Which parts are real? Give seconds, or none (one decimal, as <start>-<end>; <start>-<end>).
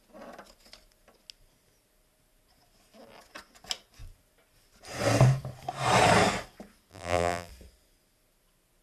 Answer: 0.0-6.9; 7.5-8.8